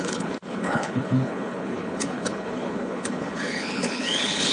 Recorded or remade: remade